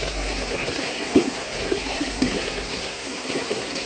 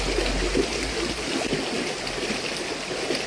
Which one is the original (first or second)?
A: second